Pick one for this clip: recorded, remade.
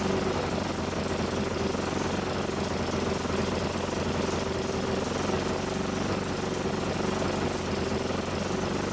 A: recorded